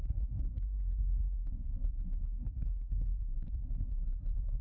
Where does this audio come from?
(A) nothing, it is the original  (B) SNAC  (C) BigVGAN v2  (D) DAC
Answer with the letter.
B